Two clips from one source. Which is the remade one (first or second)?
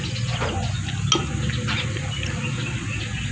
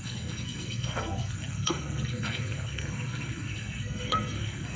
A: second